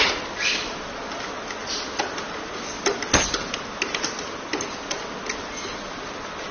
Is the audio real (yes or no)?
yes